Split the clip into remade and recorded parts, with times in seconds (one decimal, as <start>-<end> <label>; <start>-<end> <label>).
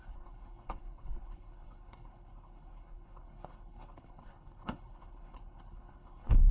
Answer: 0.0-6.5 remade